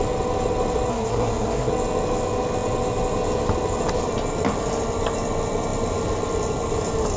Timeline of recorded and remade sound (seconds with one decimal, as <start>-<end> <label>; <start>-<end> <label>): 0.0-0.9 recorded; 0.9-1.7 remade; 1.7-7.2 recorded